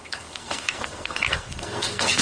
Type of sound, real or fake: fake